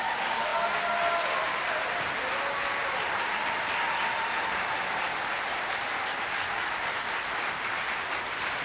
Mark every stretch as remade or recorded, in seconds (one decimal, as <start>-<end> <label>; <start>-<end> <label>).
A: 0.0-8.6 recorded